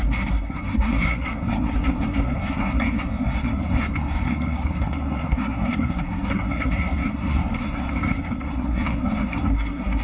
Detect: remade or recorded remade